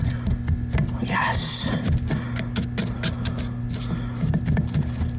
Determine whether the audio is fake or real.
real